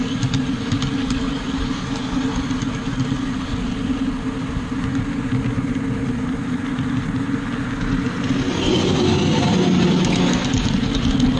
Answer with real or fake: real